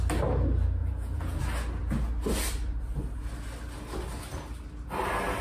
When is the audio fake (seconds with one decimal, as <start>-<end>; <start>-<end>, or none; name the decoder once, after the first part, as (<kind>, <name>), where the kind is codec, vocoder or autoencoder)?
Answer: 0.8-1.4 (vocoder, Vocos)